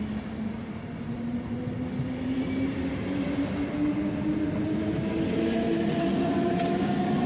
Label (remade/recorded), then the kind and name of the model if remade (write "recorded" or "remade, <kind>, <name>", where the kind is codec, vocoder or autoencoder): recorded